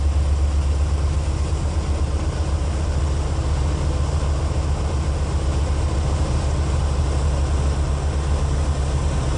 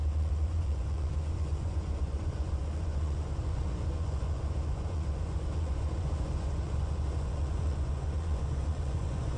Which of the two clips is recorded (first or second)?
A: first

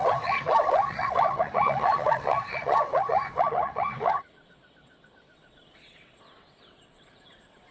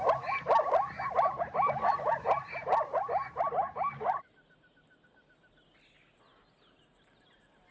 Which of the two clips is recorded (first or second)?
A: second